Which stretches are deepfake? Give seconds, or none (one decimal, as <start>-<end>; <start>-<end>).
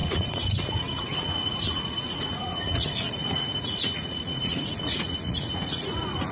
0.0-6.3